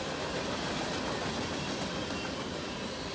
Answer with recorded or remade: recorded